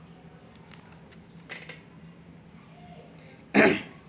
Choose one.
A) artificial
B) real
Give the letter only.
B